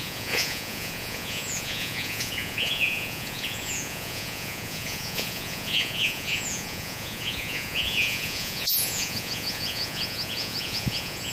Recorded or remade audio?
remade